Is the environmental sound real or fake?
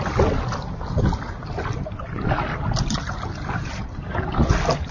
real